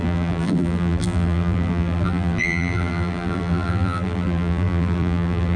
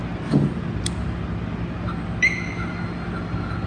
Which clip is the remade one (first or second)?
first